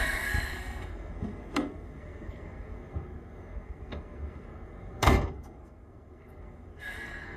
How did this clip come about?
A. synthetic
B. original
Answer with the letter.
A